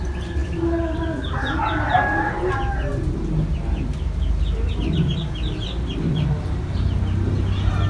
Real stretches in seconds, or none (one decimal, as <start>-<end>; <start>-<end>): 0.0-7.9